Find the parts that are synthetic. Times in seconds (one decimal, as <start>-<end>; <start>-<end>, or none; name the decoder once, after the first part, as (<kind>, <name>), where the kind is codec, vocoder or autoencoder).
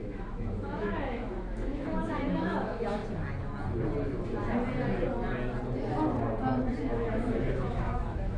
0.0-3.0 (autoencoder, DAC-VAE); 6.8-8.4